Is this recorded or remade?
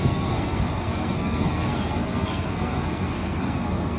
remade